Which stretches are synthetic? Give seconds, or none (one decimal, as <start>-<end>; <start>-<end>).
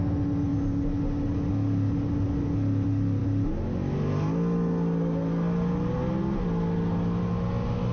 none